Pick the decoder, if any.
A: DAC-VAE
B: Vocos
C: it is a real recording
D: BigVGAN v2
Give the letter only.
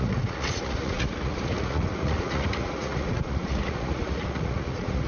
B